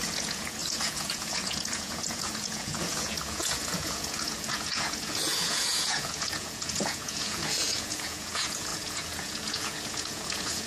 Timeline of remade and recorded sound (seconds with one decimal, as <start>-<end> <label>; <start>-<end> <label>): 0.0-10.7 remade